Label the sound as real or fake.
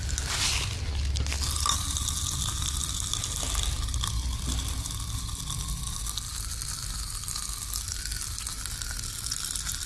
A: real